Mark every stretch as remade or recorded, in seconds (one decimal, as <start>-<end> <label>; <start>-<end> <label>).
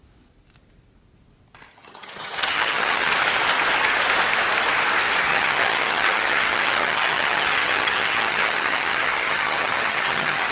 0.0-1.7 recorded; 1.7-3.1 remade; 3.1-5.3 recorded; 5.3-10.5 remade